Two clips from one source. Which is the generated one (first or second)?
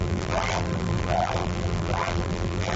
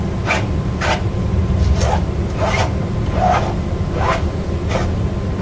first